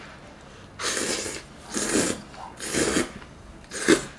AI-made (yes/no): no